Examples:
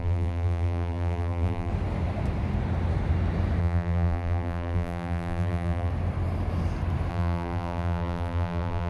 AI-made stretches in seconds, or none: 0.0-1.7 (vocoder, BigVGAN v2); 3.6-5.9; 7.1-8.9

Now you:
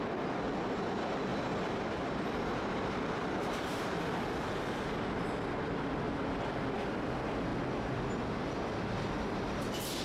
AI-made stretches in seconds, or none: 1.3-4.0 (vocoder, BigVGAN v2)

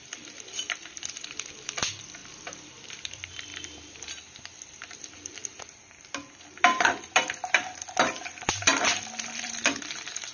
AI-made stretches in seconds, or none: 0.0-3.5 (vocoder, BigVGAN v2); 4.1-10.3